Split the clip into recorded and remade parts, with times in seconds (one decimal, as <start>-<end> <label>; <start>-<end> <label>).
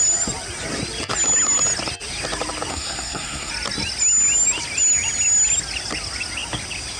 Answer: 0.0-2.7 recorded; 2.7-3.5 remade; 3.5-7.0 recorded